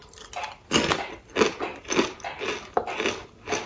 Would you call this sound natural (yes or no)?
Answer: yes